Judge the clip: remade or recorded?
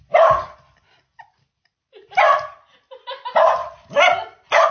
recorded